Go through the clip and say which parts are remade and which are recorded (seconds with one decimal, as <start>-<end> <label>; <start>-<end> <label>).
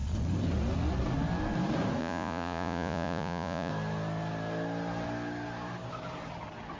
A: 0.0-2.0 recorded; 2.0-3.7 remade; 3.7-6.8 recorded